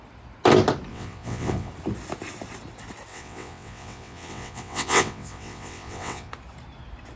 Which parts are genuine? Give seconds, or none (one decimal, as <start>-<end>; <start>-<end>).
0.0-0.9; 1.7-3.1; 6.3-7.2